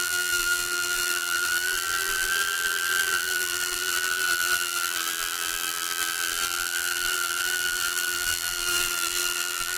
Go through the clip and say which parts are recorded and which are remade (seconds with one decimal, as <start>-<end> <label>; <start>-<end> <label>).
0.0-9.8 remade